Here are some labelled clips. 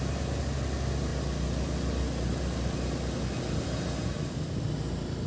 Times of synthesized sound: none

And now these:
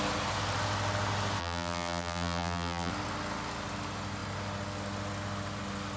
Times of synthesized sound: 1.4-2.9 (vocoder, BigVGAN v2)

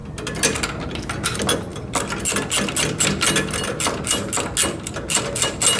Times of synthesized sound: none

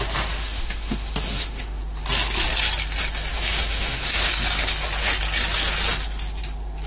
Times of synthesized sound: 0.4-1.8 (autoencoder, DAC-VAE); 3.3-4.3

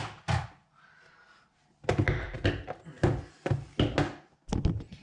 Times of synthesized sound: none

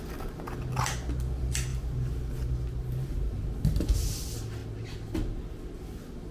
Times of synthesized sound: none

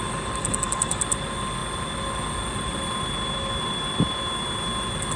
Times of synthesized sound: 0.4-1.0 (codec, DAC)